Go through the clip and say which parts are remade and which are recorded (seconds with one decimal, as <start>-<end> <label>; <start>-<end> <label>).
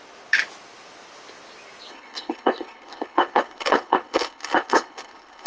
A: 0.0-1.9 recorded; 1.9-5.5 remade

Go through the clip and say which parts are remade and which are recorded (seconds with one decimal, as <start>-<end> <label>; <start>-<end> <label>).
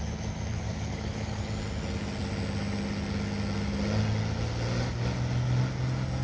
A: 0.0-0.5 recorded; 0.5-1.4 remade; 1.4-6.2 recorded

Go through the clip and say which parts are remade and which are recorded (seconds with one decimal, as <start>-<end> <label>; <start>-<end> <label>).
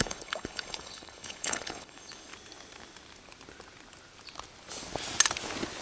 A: 0.0-2.3 remade; 2.3-5.8 recorded